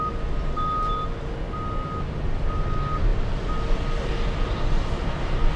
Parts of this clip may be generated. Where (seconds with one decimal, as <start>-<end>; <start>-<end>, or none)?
none